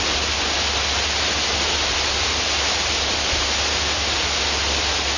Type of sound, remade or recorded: recorded